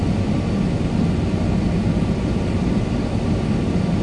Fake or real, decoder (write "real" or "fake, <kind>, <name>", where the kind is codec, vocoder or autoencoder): real